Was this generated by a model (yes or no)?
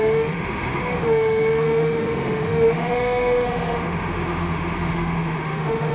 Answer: yes